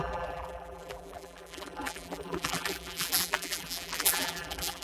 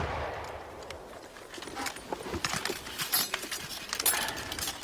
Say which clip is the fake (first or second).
first